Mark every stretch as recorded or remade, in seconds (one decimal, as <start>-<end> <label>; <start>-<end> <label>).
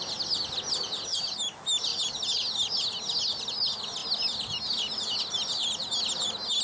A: 0.0-6.6 recorded